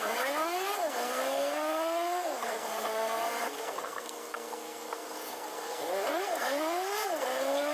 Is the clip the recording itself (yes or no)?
no